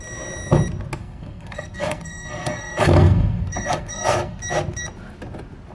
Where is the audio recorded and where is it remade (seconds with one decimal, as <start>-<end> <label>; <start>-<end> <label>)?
0.0-1.0 recorded; 1.0-4.4 remade; 4.4-5.7 recorded